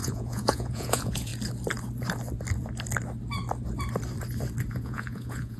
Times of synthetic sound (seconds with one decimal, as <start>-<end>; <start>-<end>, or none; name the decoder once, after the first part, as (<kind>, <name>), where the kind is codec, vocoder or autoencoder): 0.0-1.3 (vocoder, Vocos); 4.7-5.6